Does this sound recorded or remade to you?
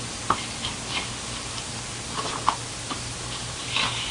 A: recorded